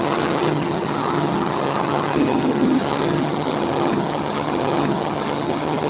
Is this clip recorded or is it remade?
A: remade